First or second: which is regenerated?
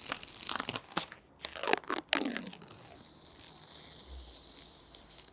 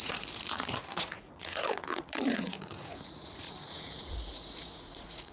second